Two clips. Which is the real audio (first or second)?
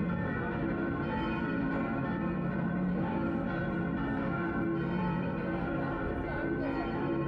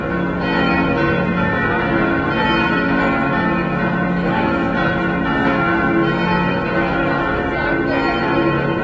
second